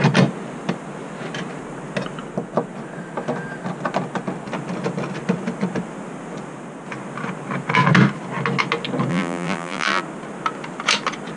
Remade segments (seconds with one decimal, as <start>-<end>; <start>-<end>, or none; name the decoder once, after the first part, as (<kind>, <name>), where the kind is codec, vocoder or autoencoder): 9.1-10.0 (vocoder, BigVGAN v2)